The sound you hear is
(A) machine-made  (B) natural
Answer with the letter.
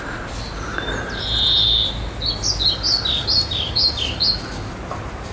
B